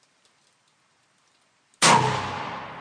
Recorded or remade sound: recorded